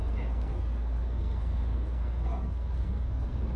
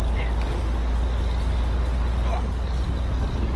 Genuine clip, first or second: second